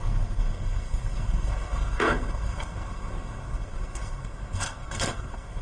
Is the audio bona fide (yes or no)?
no